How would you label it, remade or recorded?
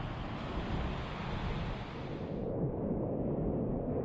recorded